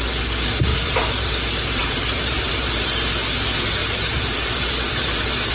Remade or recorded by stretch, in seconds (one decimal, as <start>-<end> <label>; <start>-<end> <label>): 0.0-0.7 recorded; 0.7-1.3 remade; 1.3-1.8 recorded; 1.8-2.8 remade; 2.8-3.8 recorded; 3.8-5.5 remade

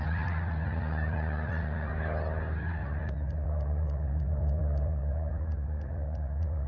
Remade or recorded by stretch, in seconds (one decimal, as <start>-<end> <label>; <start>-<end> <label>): 0.0-1.9 remade; 1.9-2.6 recorded; 2.6-6.7 remade

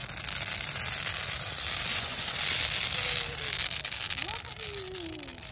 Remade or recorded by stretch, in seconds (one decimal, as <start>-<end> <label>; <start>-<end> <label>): 0.0-1.9 recorded; 1.9-2.4 remade; 2.4-5.5 recorded

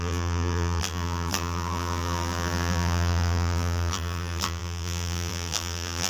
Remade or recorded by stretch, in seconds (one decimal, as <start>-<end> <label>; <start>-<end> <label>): 0.0-6.1 remade